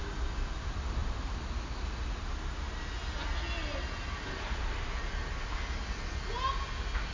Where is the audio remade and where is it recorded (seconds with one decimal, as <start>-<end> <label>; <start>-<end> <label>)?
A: 0.0-7.1 recorded